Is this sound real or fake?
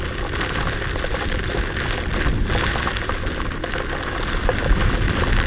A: real